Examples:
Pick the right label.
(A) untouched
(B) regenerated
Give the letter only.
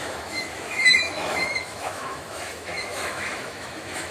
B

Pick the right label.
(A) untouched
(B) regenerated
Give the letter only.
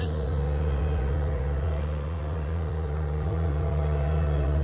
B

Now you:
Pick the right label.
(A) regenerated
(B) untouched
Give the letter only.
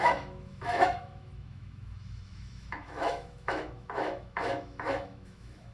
A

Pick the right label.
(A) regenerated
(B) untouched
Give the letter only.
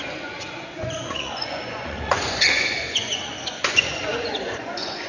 A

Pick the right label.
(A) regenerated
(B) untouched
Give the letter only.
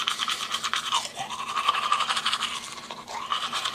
B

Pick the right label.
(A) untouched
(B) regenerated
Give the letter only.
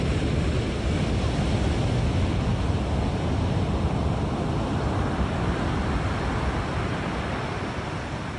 A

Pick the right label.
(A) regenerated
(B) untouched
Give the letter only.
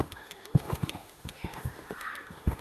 A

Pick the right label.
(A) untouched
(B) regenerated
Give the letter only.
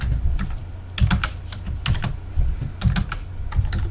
A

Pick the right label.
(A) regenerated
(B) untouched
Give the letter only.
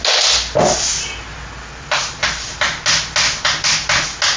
B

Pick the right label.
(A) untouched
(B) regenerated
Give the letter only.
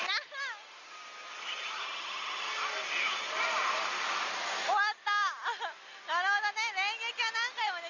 A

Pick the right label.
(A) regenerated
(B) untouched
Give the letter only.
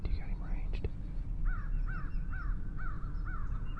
B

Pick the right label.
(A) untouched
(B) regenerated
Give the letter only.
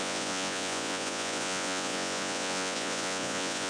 B